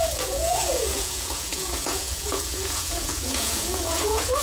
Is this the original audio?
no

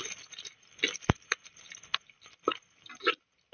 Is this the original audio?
yes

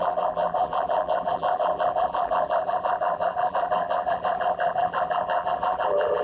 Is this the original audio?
no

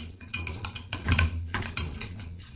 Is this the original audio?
no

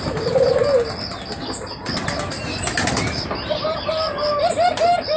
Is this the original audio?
yes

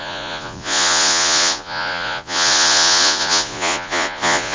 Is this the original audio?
no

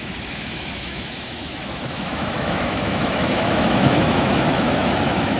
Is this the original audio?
no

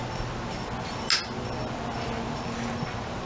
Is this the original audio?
yes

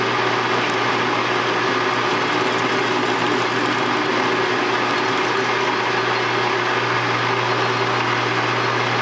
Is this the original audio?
yes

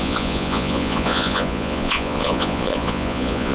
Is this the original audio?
no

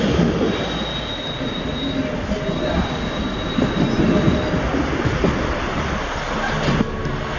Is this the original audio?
yes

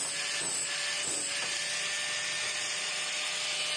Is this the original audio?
yes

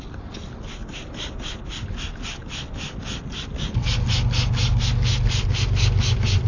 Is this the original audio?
yes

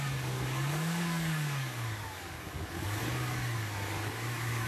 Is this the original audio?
no